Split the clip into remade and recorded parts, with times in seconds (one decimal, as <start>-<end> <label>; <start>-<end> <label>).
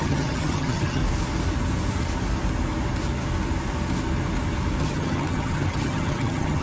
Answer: 0.0-1.0 remade; 1.0-4.8 recorded; 4.8-6.6 remade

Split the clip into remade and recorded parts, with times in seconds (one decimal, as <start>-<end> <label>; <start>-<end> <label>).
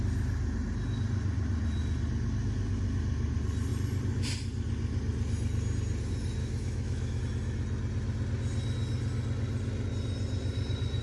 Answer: 0.0-6.4 recorded; 6.4-7.2 remade; 7.2-11.0 recorded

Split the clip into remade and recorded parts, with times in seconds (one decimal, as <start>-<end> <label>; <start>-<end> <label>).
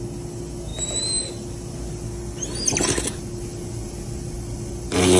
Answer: 0.0-5.2 recorded